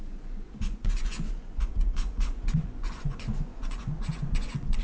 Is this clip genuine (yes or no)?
no